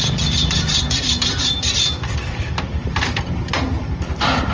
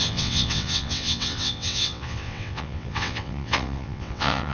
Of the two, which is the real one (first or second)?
first